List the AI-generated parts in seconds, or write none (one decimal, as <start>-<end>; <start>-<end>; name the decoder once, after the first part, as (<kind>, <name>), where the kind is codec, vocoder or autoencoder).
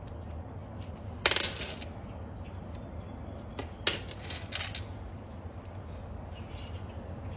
none